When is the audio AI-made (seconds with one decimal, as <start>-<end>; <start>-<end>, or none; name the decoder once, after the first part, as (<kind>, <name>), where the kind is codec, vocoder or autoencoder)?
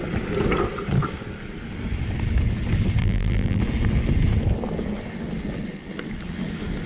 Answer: 3.0-3.6 (vocoder, BigVGAN v2)